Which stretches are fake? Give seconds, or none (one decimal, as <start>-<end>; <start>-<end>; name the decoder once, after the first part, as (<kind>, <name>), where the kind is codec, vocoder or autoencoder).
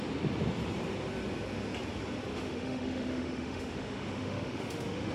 2.3-5.1 (autoencoder, DAC-VAE)